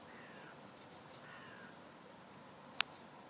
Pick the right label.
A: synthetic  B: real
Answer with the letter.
B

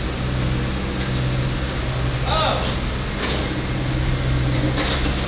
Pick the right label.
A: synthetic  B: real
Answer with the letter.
B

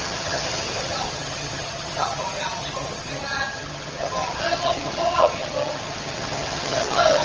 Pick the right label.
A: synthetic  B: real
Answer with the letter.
A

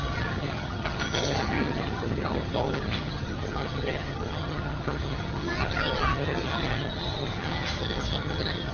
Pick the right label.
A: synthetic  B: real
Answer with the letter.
A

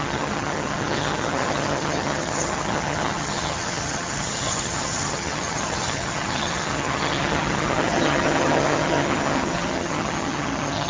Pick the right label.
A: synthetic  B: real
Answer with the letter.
A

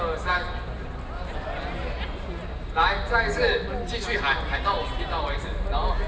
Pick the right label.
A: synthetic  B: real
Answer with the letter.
B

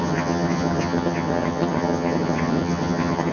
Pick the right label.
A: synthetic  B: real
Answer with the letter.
A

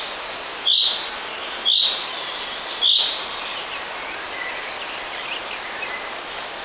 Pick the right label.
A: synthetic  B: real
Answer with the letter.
B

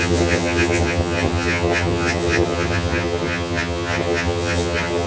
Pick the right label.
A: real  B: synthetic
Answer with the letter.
B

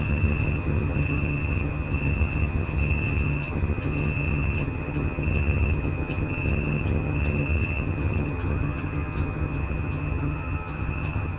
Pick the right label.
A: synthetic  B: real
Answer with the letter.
A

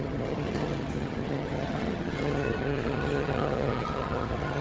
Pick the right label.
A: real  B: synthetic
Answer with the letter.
B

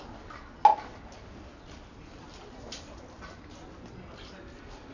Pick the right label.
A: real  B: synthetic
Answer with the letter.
A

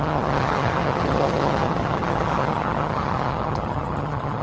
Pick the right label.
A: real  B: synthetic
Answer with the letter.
B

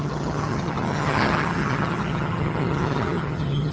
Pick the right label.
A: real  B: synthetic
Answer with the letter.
B